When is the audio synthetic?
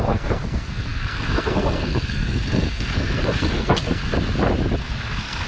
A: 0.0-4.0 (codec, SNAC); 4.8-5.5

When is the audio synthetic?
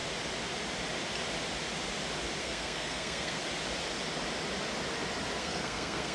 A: 2.4-3.4 (codec, SNAC); 5.4-6.1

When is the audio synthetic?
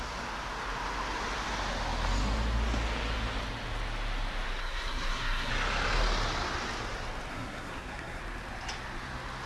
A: 4.6-5.5 (codec, SNAC); 7.3-8.2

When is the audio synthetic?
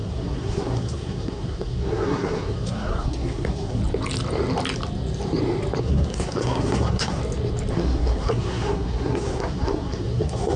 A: 0.0-3.8 (codec, SNAC); 5.8-7.2; 7.7-10.6